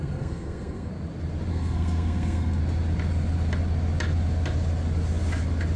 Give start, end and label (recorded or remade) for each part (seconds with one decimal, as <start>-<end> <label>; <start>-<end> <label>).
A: 0.0-0.9 remade; 0.9-1.5 recorded; 1.5-2.6 remade; 2.6-5.8 recorded